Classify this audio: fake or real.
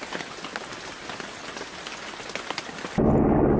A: real